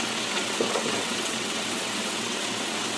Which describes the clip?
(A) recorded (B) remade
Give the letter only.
B